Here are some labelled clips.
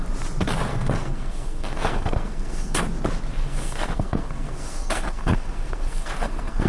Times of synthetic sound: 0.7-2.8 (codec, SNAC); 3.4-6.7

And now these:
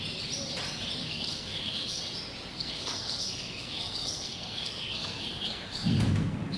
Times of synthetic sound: 1.0-2.0 (codec, SNAC); 2.5-6.6

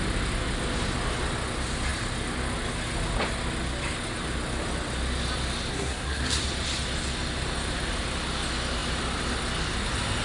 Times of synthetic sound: 5.7-6.4 (codec, SNAC)

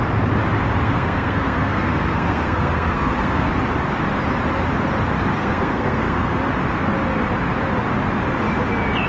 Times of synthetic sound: 0.8-3.5 (codec, SNAC); 5.4-6.4

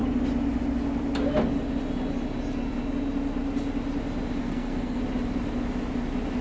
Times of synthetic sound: 4.4-5.0 (codec, SNAC)

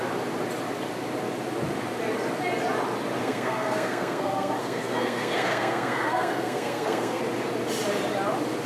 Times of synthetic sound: 3.2-7.2 (codec, SNAC)